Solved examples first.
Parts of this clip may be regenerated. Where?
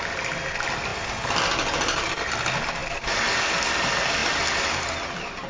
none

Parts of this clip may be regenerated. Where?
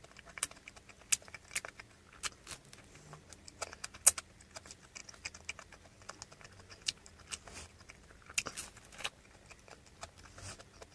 none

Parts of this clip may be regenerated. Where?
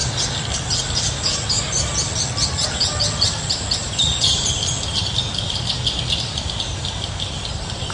3.8-4.5 (vocoder, BigVGAN v2)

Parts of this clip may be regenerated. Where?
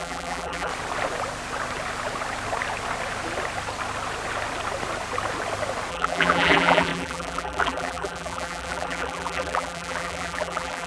0.0-0.7 (vocoder, BigVGAN v2); 5.9-10.9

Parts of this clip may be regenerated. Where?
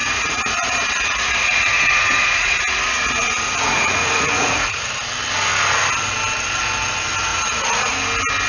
0.0-4.9 (vocoder, Vocos); 7.3-7.9